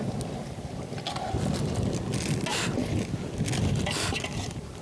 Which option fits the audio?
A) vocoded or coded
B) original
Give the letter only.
B